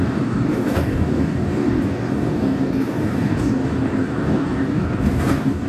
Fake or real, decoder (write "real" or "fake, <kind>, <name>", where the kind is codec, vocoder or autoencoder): fake, codec, DAC